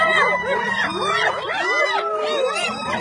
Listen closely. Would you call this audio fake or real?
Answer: fake